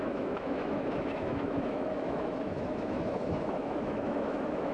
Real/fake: fake